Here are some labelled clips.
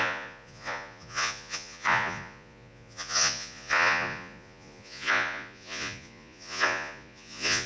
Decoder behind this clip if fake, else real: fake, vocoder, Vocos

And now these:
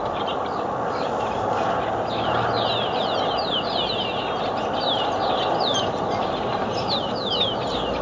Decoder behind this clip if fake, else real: real